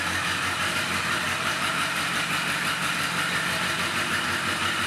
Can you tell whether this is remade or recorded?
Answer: remade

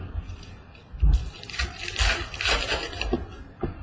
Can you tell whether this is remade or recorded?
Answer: recorded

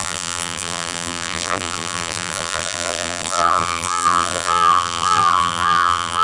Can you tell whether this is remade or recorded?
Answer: remade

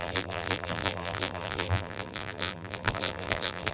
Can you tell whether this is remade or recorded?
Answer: remade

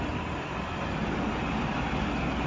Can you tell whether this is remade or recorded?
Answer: remade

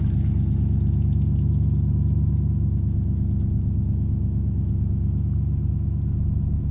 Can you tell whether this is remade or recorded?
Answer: recorded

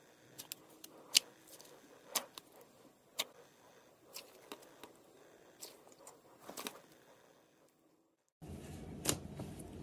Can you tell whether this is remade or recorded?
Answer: recorded